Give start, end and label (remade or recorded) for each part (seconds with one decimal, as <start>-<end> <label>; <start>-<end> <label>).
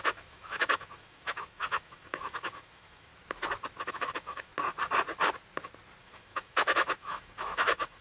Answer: 0.0-3.1 remade; 3.1-3.8 recorded; 3.8-4.5 remade; 4.5-6.0 recorded; 6.0-8.0 remade